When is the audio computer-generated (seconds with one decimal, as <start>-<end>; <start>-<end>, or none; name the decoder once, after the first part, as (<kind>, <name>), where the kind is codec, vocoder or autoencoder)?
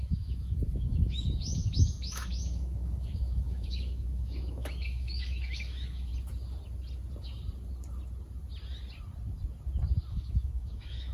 0.0-6.1 (autoencoder, DAC-VAE); 10.1-11.1